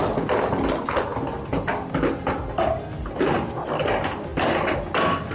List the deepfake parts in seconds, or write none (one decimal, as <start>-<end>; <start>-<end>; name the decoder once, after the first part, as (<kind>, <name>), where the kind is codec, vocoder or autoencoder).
none